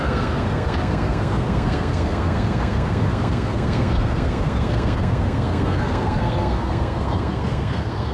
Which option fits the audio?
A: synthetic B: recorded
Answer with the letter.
A